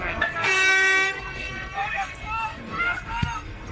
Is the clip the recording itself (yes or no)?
no